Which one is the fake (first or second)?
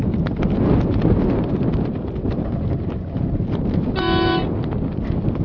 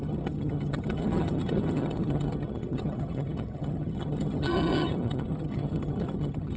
second